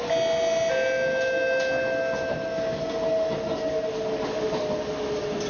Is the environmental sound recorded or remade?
recorded